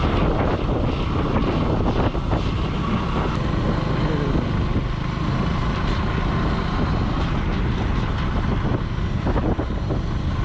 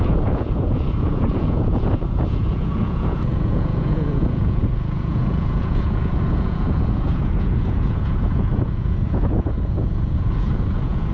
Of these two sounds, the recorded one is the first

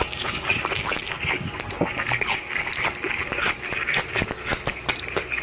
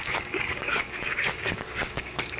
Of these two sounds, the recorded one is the first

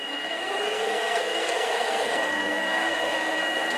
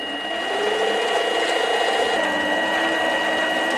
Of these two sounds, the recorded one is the second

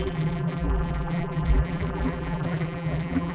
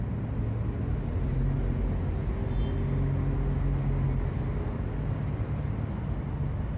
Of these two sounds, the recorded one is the second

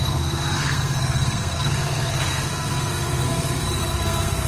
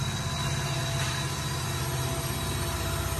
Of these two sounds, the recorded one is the second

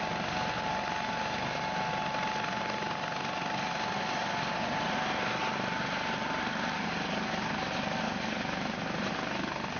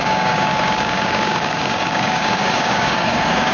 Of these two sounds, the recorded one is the first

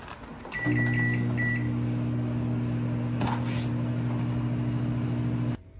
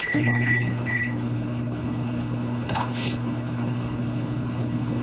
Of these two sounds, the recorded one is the first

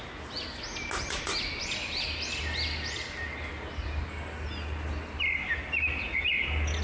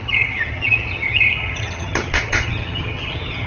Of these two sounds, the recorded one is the first